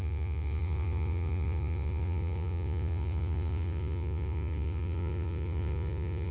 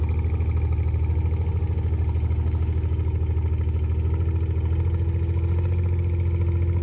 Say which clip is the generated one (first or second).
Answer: first